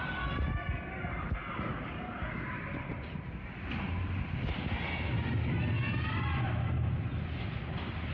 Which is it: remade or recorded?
recorded